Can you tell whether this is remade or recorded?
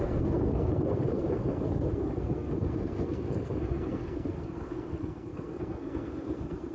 remade